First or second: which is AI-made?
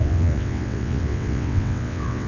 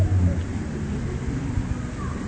first